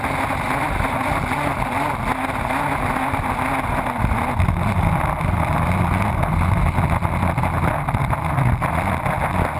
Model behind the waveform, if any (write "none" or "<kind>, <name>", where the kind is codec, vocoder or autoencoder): none